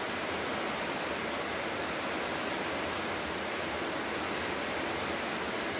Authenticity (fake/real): real